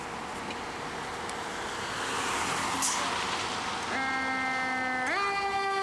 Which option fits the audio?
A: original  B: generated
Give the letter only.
A